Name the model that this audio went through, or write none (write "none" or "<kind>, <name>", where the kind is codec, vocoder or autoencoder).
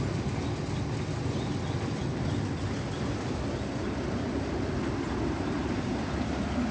none